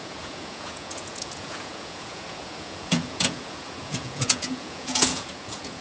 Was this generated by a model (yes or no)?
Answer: yes